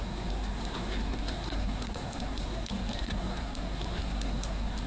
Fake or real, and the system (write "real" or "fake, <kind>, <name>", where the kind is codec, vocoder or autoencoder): fake, codec, SNAC